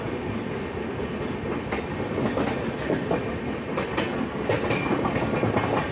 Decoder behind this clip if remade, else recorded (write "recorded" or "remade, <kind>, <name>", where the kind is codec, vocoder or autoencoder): recorded